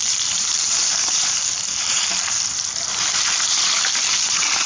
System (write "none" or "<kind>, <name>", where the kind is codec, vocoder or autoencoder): vocoder, BigVGAN v2